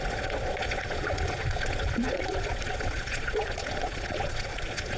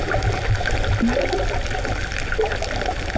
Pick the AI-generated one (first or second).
first